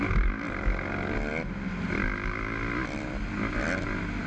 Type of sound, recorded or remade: recorded